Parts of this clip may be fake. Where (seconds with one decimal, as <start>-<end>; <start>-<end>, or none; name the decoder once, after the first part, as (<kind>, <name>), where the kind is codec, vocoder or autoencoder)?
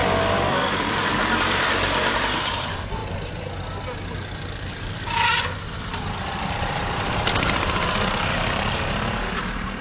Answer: 0.9-3.0 (vocoder, BigVGAN v2); 6.4-9.8